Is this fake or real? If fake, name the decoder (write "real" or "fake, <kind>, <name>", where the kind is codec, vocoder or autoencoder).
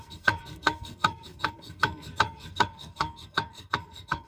fake, codec, SNAC